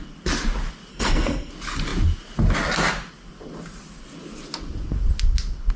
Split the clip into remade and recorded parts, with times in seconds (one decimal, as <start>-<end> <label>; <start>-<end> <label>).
0.0-0.9 recorded; 0.9-1.5 remade; 1.5-5.8 recorded